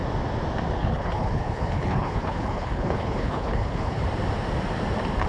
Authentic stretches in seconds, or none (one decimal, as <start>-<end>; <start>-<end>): 0.0-0.8; 4.0-5.3